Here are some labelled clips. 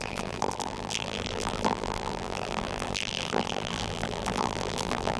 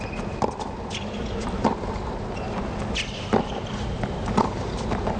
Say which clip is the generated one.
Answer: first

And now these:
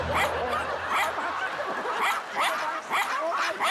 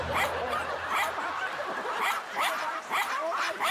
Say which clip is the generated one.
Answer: second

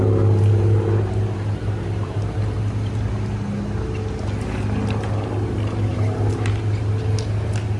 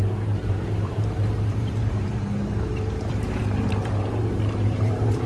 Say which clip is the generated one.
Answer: second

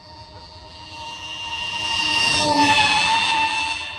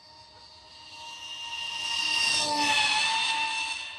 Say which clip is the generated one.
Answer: first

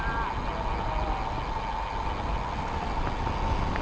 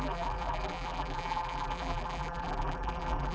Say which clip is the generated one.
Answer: second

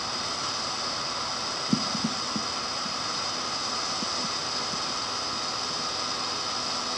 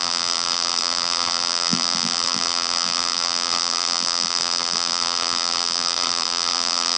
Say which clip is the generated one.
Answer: second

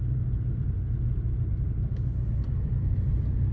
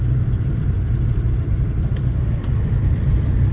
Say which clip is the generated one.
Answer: second